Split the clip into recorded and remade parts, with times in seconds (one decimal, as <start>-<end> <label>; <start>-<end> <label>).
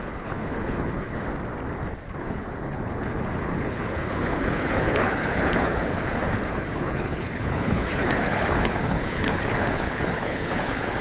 0.0-1.3 remade; 1.3-2.2 recorded; 2.2-11.0 remade